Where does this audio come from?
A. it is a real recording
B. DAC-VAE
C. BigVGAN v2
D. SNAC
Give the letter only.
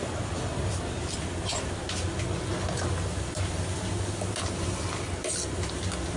A